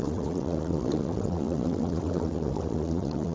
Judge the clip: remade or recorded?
remade